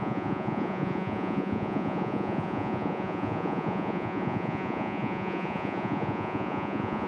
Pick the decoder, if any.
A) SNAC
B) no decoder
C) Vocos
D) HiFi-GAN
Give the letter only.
C